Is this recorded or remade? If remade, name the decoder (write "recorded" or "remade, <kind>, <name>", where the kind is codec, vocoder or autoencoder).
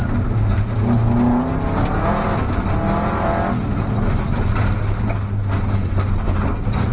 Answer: recorded